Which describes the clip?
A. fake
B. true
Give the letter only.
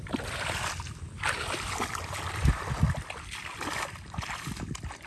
B